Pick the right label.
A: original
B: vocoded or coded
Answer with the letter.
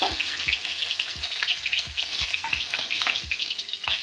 B